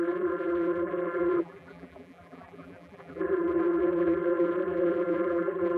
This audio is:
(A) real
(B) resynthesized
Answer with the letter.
B